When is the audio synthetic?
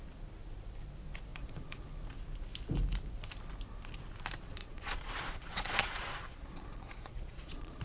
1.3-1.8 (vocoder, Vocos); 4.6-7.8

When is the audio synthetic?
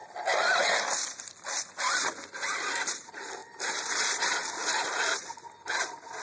none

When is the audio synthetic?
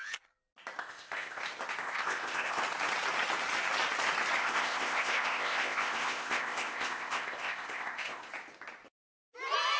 0.8-1.4 (codec, ZipCodec); 1.8-2.6; 4.4-8.3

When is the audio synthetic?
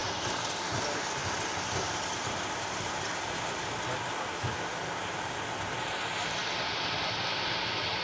none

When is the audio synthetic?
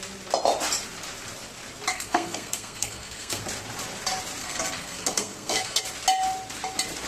1.9-3.4 (codec, SNAC); 4.4-5.8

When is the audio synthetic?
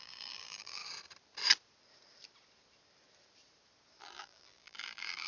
0.0-0.8 (vocoder, BigVGAN v2); 4.0-5.3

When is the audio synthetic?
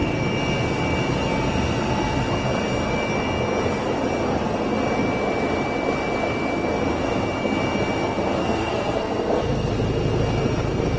8.4-9.7 (codec, SNAC)